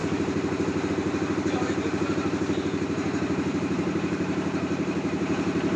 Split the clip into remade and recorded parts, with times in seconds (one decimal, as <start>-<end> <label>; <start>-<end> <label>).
0.0-5.8 remade